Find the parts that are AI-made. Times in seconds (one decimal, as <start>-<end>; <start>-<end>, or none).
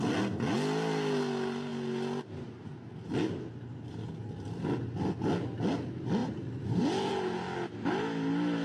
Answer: 6.2-6.8